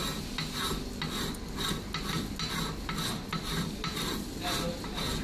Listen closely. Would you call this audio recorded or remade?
recorded